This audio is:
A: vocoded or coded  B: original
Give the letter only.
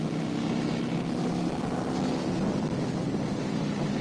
B